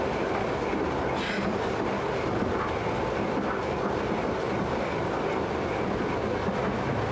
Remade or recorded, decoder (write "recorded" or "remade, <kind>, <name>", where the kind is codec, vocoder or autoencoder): recorded